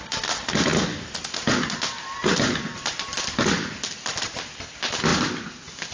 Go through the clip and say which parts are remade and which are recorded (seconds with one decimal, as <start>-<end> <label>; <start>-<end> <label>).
0.0-5.9 recorded